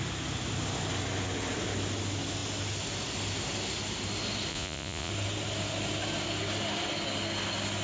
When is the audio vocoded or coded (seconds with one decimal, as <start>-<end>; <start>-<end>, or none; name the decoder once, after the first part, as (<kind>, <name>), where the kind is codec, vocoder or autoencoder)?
4.5-5.1 (vocoder, Vocos)